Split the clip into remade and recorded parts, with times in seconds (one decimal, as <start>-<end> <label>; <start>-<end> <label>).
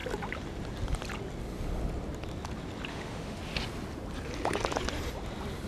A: 0.0-2.9 recorded; 2.9-3.4 remade; 3.4-5.7 recorded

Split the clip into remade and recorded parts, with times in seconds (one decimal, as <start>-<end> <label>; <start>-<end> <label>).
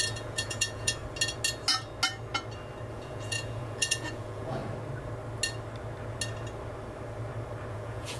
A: 0.0-1.0 remade; 1.0-2.9 recorded; 2.9-4.6 remade; 4.6-7.7 recorded; 7.7-8.2 remade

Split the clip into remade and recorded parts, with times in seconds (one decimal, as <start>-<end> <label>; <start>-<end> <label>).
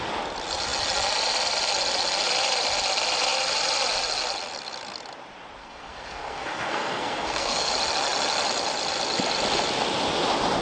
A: 0.0-5.6 recorded; 5.6-7.7 remade; 7.7-10.6 recorded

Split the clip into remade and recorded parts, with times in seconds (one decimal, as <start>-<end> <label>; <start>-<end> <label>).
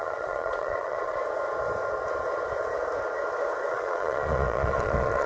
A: 0.0-1.2 remade; 1.2-3.7 recorded; 3.7-5.3 remade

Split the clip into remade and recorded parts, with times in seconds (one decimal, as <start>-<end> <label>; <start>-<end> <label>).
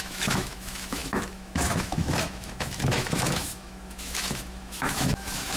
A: 0.0-5.6 remade